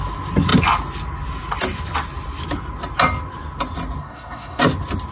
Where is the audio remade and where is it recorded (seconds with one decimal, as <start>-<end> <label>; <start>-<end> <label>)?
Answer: 0.0-4.0 recorded; 4.0-4.6 remade; 4.6-5.1 recorded